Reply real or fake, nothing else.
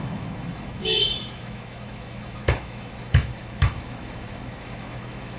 fake